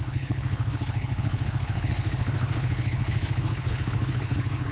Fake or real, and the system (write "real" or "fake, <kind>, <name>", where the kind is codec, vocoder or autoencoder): fake, codec, HILCodec